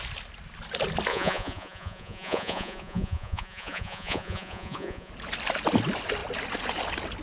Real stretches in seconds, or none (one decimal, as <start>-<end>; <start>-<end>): 0.0-1.1; 5.1-7.2

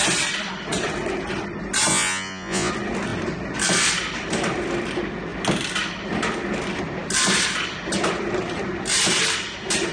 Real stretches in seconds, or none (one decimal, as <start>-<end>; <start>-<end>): 0.0-1.9; 2.7-9.9

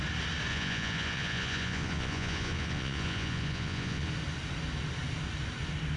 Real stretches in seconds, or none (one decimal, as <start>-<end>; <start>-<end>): 0.0-0.5; 4.1-6.0